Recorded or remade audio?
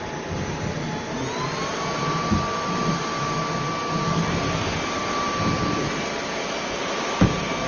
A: recorded